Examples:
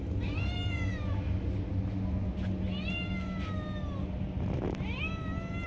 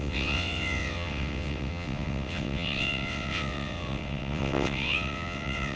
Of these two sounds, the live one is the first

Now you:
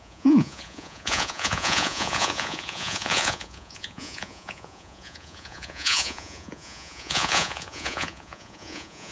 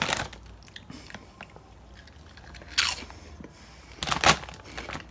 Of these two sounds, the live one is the second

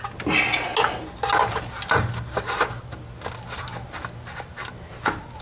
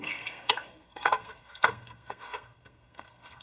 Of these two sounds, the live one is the first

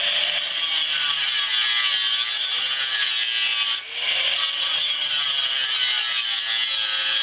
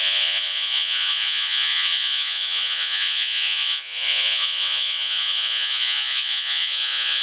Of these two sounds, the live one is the first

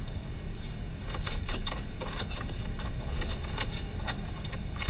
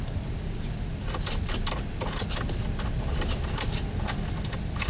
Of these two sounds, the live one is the second